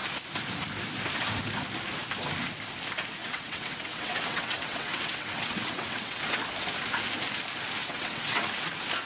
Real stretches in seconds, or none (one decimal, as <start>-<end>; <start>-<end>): 0.0-3.2; 6.2-7.8; 8.4-9.1